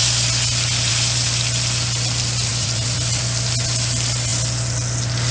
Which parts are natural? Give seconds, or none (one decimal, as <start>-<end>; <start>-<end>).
0.0-2.5; 3.2-5.3